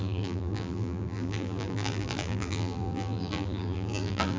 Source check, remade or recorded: remade